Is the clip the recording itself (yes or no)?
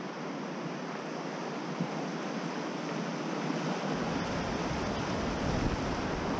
yes